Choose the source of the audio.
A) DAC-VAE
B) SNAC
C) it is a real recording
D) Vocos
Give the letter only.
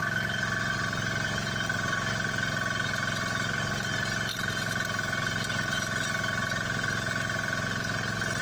C